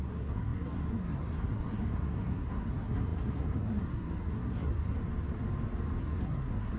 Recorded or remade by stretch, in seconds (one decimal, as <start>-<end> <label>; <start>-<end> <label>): 0.0-5.0 remade; 5.0-6.0 recorded; 6.0-6.8 remade